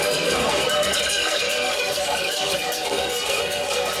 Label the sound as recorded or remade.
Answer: remade